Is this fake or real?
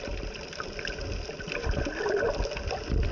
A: real